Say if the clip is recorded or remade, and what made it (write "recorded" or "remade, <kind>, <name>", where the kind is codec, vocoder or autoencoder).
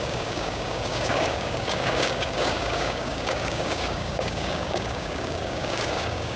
remade, codec, DAC